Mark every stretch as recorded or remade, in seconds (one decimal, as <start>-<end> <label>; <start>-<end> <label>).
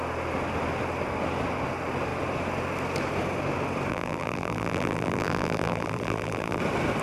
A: 0.0-3.9 recorded; 3.9-6.6 remade; 6.6-7.0 recorded